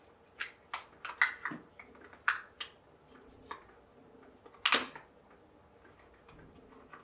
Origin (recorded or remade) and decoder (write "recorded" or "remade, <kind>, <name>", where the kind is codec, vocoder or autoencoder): recorded